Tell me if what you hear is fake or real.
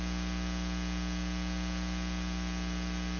real